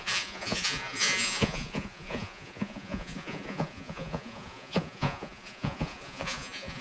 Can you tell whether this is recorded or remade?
remade